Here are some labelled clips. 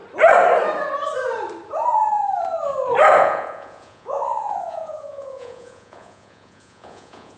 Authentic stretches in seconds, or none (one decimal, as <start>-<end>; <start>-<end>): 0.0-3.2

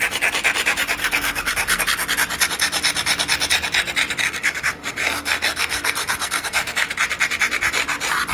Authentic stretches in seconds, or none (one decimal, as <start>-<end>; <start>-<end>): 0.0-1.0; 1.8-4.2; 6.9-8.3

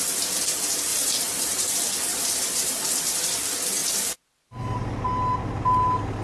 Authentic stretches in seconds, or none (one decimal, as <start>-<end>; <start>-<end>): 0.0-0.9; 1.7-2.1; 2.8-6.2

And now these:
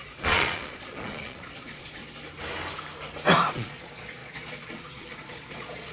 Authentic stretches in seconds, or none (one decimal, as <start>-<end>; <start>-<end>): 2.0-3.5

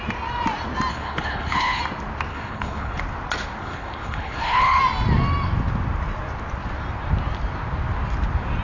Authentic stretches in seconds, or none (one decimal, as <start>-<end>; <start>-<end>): 0.0-0.9; 1.8-2.3; 3.0-3.6; 4.8-8.6

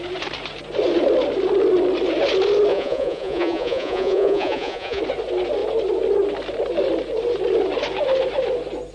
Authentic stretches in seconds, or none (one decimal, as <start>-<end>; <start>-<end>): 0.0-2.7; 5.0-8.9

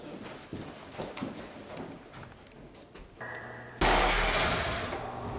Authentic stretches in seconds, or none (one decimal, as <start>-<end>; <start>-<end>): 0.0-5.4

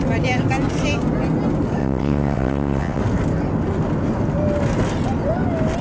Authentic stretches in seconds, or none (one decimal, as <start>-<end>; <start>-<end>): 0.0-1.8; 3.0-5.8